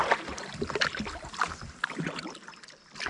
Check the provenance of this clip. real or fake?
real